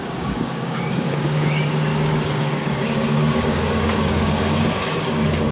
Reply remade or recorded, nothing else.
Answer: remade